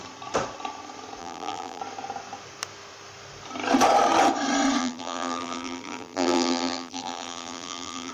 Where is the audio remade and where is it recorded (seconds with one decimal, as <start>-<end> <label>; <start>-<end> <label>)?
0.0-1.2 recorded; 1.2-1.8 remade; 1.8-4.8 recorded; 4.8-8.1 remade